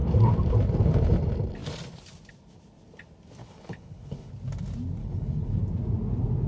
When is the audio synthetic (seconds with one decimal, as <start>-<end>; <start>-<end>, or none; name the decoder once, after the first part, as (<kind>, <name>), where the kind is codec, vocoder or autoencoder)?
3.4-4.3 (codec, HILCodec); 5.0-5.6